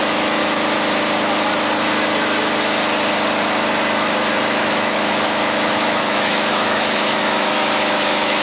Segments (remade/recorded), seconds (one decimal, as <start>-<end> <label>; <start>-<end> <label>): 0.0-0.4 remade; 0.4-4.3 recorded; 4.3-8.4 remade